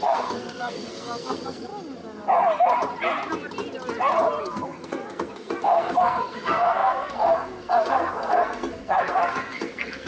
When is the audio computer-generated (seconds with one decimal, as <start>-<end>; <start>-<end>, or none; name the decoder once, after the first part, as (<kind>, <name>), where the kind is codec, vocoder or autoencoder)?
0.0-1.7 (codec, SNAC); 4.4-10.1